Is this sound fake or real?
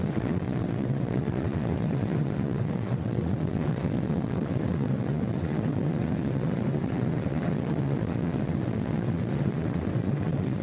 fake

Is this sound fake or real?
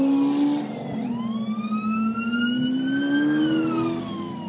real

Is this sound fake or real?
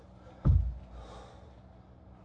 real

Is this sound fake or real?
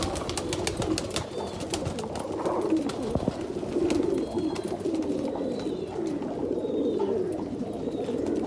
real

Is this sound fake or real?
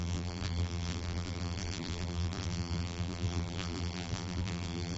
fake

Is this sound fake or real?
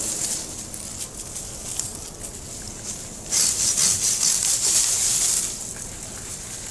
real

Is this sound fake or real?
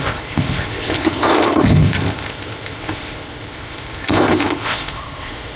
fake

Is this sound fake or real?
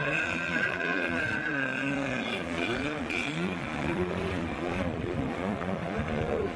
fake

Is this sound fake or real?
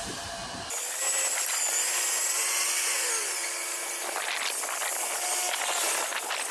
real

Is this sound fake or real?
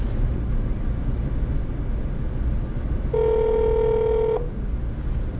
real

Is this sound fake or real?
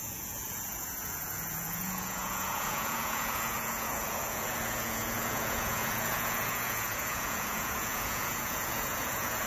fake